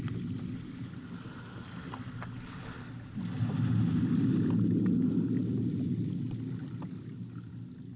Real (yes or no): yes